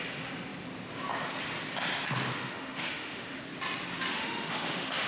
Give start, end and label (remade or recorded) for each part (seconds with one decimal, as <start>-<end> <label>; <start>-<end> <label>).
0.0-2.3 recorded; 2.3-3.4 remade; 3.4-4.1 recorded; 4.1-5.1 remade